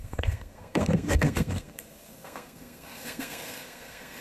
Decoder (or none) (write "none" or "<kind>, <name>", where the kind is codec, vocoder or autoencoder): codec, SNAC